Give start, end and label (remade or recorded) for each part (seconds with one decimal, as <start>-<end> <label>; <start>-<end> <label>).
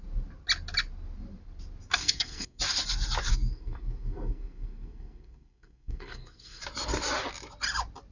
0.0-2.0 recorded; 2.0-2.6 remade; 2.6-3.3 recorded; 3.3-6.6 remade; 6.6-8.1 recorded